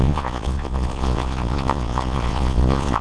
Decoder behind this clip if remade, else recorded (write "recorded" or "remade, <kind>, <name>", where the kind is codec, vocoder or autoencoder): remade, vocoder, Vocos